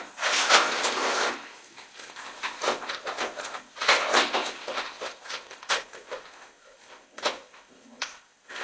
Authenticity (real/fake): fake